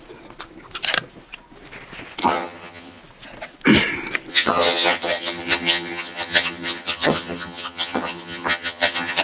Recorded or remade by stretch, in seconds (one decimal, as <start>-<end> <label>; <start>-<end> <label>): 0.0-2.2 recorded; 2.2-3.0 remade; 3.0-4.3 recorded; 4.3-9.2 remade